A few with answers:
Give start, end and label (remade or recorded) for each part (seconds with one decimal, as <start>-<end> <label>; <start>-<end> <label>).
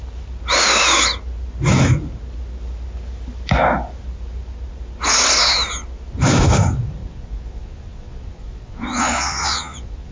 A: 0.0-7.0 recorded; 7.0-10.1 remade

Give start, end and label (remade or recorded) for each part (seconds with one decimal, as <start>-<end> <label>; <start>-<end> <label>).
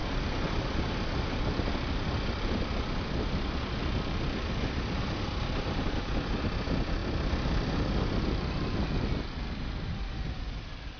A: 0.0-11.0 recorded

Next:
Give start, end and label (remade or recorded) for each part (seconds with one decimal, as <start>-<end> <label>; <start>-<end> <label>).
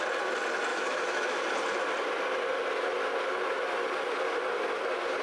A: 0.0-0.7 recorded; 0.7-1.4 remade; 1.4-5.2 recorded